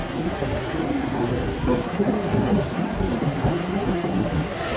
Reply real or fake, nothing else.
fake